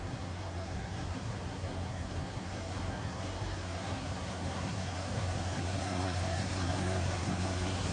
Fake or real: fake